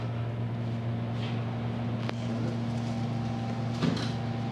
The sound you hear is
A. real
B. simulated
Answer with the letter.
A